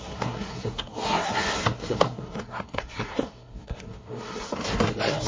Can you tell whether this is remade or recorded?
remade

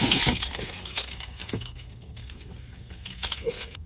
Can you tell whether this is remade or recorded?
remade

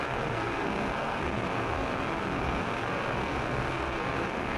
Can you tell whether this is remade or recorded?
remade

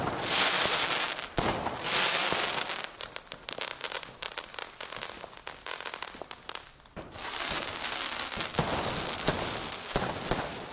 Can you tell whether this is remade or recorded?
recorded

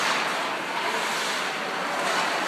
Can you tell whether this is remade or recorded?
recorded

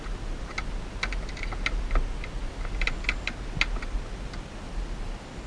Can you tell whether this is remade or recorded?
recorded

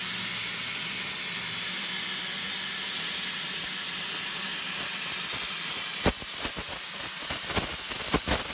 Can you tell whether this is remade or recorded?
recorded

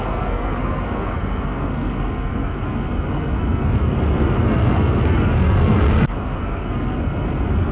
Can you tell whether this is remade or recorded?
remade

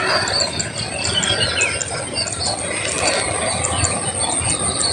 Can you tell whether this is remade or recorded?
recorded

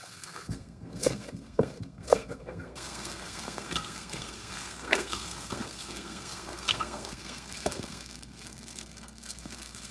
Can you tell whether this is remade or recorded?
remade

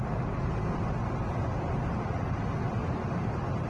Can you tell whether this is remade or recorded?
recorded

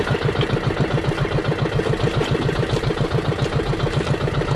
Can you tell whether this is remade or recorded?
recorded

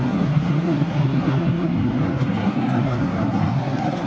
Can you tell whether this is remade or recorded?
remade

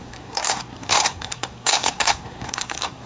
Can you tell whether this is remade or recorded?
remade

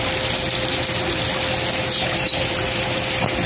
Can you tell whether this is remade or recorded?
recorded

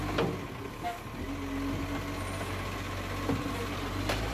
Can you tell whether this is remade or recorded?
recorded